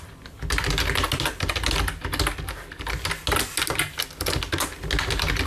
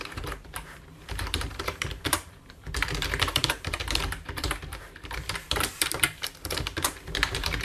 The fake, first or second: second